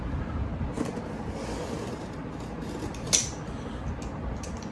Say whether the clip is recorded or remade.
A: recorded